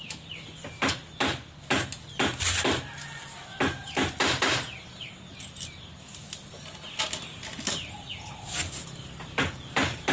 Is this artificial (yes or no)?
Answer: no